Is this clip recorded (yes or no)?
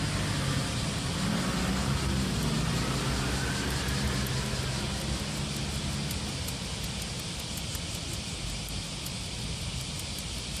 yes